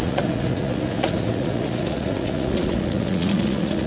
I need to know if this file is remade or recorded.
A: remade